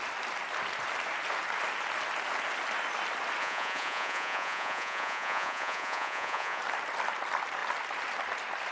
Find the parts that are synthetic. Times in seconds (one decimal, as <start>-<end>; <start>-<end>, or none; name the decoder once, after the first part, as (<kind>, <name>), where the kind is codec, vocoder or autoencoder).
3.4-6.6 (vocoder, Vocos)

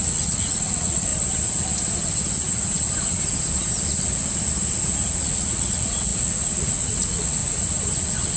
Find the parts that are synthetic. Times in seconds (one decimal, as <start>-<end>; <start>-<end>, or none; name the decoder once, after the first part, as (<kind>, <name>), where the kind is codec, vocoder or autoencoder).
0.0-1.1 (vocoder, Vocos); 5.2-7.4

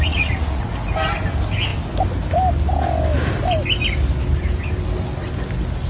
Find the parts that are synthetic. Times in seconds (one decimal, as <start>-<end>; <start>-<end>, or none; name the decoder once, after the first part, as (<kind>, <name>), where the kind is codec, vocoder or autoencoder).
0.0-0.7 (vocoder, Vocos)